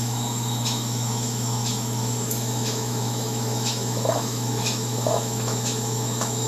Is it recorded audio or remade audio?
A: remade